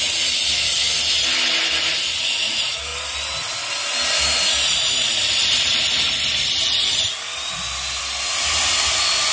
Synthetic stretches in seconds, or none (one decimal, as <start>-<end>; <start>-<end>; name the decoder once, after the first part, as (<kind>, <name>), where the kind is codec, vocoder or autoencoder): none